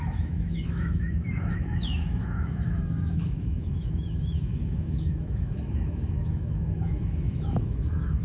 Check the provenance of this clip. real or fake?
fake